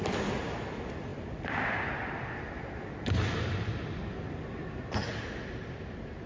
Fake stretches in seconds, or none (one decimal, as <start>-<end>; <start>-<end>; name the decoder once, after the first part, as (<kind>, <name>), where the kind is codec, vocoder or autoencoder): 1.1-4.9 (vocoder, BigVGAN v2)

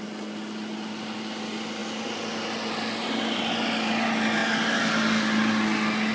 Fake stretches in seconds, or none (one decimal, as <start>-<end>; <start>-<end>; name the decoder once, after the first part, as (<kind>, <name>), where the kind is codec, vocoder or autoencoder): none